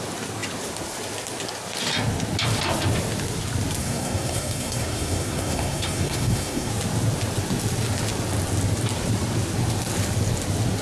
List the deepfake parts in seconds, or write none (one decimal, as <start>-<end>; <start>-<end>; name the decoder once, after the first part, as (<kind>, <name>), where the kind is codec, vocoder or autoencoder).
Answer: 3.8-6.7 (codec, SNAC)